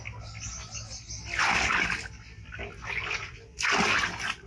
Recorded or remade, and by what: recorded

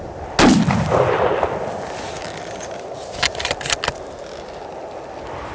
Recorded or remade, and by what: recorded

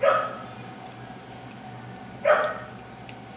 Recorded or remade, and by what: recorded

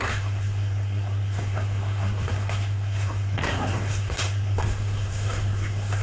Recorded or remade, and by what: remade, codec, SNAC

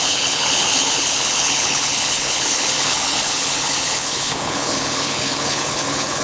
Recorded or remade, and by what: remade, codec, HILCodec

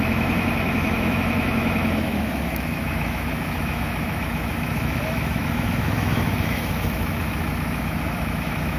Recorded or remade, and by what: remade, autoencoder, DAC-VAE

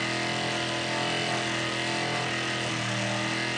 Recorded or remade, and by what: recorded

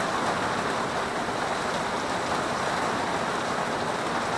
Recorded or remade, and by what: recorded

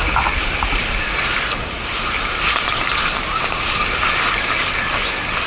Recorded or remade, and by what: recorded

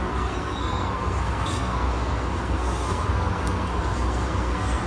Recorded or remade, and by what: remade, codec, SNAC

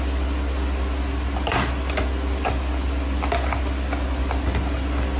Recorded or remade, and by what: recorded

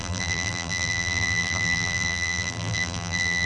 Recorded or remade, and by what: remade, vocoder, BigVGAN v2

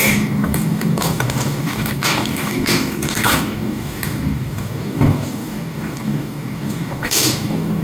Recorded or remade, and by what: remade, codec, DAC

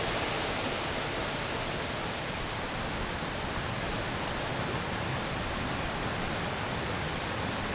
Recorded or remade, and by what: recorded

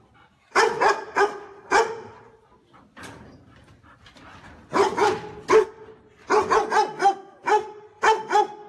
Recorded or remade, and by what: recorded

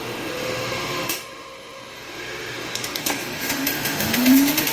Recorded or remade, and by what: remade, autoencoder, DAC-VAE